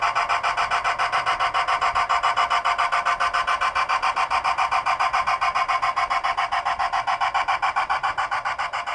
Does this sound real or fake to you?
real